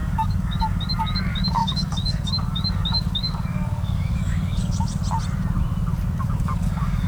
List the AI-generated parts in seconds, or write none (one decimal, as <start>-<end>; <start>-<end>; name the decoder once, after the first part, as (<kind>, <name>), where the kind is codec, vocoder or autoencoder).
0.0-5.0 (codec, DAC); 6.2-7.1